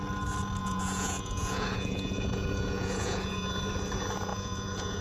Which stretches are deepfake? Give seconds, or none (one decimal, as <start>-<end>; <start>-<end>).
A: 0.6-3.6; 4.3-5.0